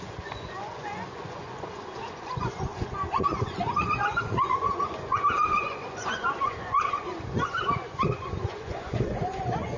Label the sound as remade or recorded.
remade